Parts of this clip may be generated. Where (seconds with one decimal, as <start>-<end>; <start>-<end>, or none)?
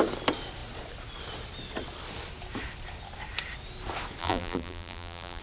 4.2-5.4